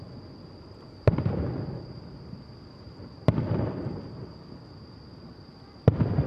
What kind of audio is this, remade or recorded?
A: recorded